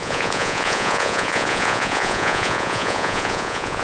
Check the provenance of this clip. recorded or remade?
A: remade